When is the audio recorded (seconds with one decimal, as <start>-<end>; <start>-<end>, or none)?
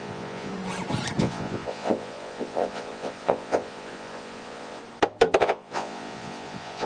0.5-1.2; 4.8-5.4